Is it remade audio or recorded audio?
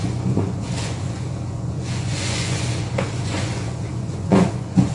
remade